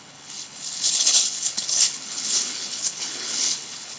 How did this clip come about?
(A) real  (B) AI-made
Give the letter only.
B